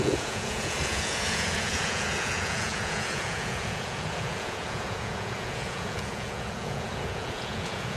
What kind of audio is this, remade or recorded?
remade